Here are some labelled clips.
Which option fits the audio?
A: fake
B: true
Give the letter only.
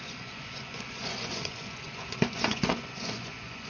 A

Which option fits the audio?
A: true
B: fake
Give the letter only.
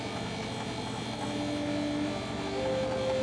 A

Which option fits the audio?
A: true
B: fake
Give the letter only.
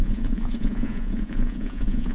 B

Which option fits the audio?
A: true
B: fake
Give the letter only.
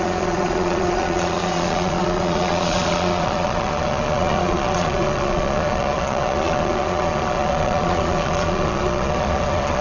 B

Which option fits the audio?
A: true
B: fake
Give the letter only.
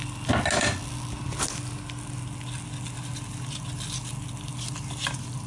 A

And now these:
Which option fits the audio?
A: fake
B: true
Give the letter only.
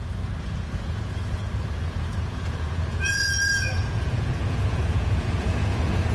A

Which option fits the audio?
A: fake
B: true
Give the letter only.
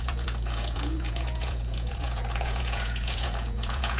A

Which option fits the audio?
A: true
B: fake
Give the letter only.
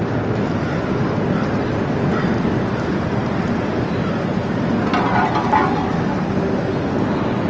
A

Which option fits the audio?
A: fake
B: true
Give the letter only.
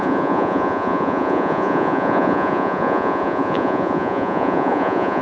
A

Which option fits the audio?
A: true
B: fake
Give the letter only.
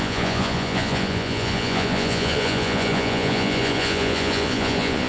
B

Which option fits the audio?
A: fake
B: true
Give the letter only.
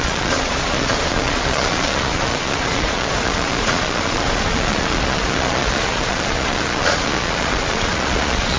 A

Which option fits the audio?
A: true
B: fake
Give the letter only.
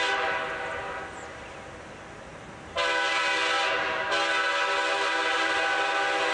A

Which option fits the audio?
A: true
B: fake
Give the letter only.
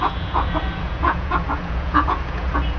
B